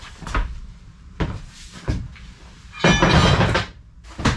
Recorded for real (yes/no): yes